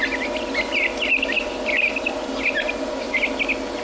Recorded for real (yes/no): yes